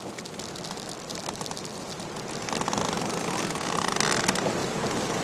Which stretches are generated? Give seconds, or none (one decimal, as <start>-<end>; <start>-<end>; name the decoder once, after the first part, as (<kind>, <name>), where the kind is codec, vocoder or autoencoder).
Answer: none